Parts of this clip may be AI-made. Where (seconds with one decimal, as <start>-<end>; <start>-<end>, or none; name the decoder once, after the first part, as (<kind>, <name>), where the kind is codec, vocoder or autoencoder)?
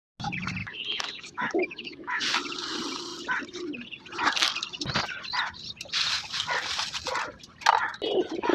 0.6-2.2 (autoencoder, DAC-VAE)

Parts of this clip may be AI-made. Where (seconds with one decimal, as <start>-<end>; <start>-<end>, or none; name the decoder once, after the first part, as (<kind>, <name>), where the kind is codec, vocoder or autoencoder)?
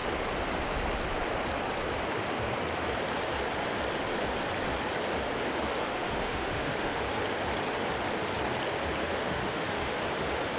5.6-7.0 (autoencoder, DAC-VAE); 9.0-10.0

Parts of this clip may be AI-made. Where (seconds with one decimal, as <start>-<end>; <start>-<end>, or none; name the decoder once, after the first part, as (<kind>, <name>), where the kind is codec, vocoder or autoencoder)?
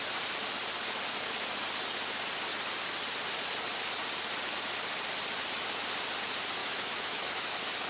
6.6-7.5 (autoencoder, DAC-VAE)